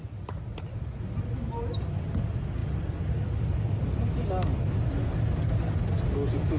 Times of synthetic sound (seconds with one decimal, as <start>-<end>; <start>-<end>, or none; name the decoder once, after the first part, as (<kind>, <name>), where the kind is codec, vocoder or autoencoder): none